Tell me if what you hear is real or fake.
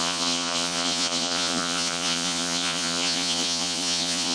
fake